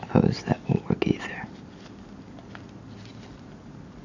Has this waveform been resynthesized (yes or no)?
no